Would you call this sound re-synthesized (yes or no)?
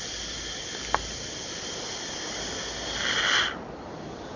no